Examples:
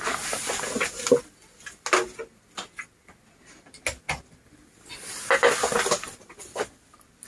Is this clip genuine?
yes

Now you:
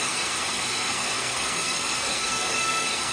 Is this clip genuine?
no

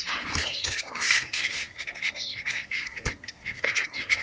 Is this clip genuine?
no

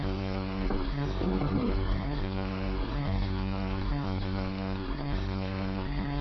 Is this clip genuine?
no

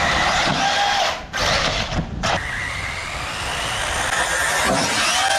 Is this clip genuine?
yes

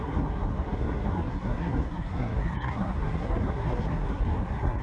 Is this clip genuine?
no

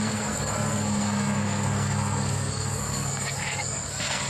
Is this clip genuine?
no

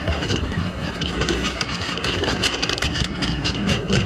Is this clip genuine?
no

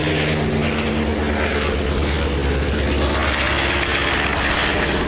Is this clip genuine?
yes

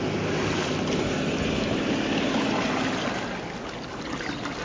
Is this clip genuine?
yes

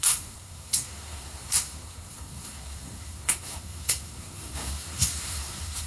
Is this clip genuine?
no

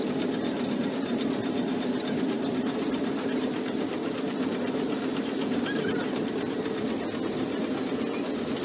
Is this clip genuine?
yes